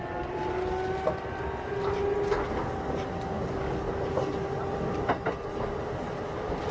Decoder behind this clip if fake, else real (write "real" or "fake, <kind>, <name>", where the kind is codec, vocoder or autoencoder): real